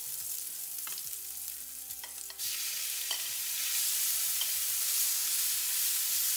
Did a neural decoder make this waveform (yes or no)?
yes